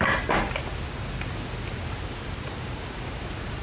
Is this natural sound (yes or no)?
yes